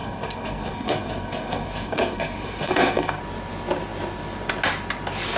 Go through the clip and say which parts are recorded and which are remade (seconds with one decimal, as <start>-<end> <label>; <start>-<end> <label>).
0.0-3.2 remade; 3.2-5.4 recorded